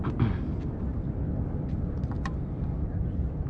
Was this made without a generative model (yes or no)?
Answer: yes